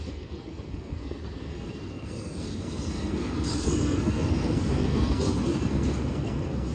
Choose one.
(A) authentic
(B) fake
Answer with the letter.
B